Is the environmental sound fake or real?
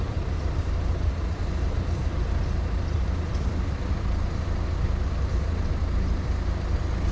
fake